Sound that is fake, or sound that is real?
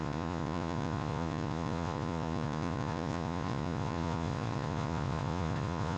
fake